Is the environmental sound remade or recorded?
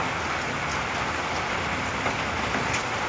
recorded